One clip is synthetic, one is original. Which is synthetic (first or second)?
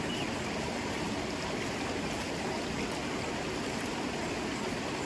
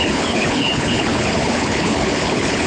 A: second